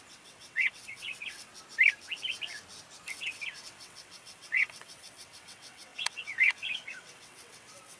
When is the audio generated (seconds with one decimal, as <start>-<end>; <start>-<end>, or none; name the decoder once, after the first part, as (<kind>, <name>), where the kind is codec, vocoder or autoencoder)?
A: 0.0-1.5 (vocoder, WaveNeXt); 3.1-8.0